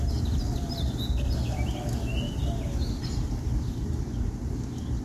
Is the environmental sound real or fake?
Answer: real